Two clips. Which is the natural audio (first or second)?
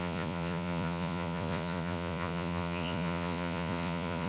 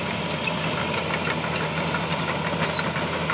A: second